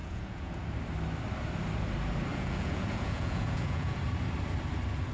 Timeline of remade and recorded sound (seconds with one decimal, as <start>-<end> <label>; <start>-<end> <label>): 0.0-0.6 remade; 0.6-2.3 recorded; 2.3-4.0 remade; 4.0-5.1 recorded